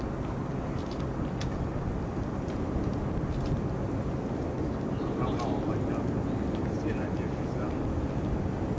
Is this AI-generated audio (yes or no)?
no